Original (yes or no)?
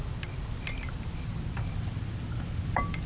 yes